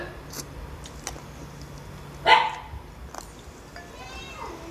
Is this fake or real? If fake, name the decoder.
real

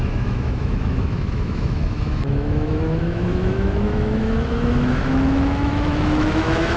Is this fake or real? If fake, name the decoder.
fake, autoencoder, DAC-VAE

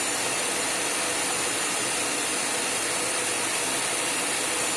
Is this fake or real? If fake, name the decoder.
real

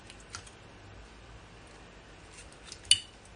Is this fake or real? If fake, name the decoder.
real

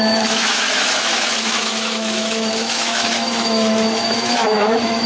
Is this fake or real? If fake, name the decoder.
fake, autoencoder, DAC-VAE